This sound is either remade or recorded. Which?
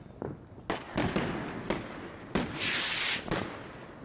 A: recorded